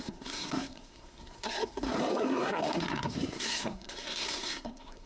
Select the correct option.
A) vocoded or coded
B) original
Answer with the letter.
A